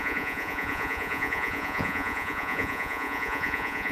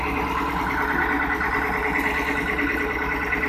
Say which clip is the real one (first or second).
second